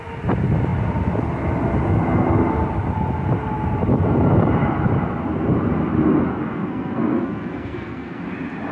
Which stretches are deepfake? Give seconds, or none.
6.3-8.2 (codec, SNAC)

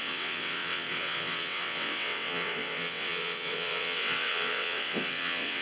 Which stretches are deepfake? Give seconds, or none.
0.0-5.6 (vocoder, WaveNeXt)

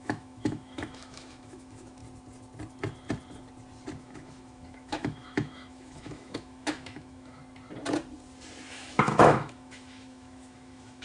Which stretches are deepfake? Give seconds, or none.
0.0-2.0 (autoencoder, DAC-VAE); 4.0-7.4; 8.7-11.0

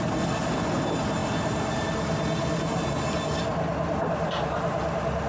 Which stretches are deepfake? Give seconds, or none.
none

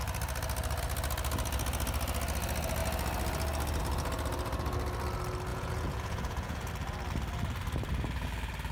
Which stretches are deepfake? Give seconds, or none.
5.5-6.7 (vocoder, Vocos)

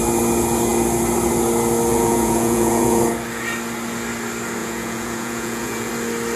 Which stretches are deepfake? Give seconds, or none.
1.9-3.0 (vocoder, Vocos); 4.6-5.9

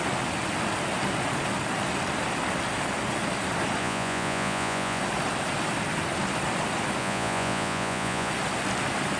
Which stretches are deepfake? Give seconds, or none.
3.8-5.0 (vocoder, Vocos); 7.0-8.3

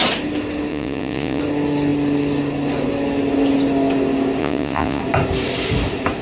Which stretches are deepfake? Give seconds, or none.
0.7-1.4 (vocoder, Vocos); 4.4-5.0